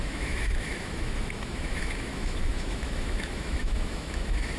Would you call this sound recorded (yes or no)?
no